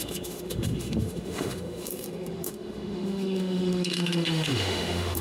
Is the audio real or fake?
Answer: fake